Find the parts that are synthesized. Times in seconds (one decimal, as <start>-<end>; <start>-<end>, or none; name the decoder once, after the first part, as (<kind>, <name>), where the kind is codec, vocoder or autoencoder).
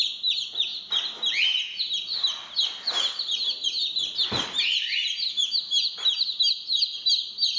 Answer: none